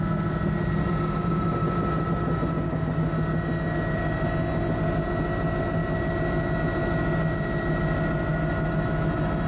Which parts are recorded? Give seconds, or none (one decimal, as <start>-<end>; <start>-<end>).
0.0-8.3; 9.1-9.5